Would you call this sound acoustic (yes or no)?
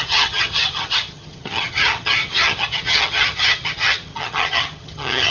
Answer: no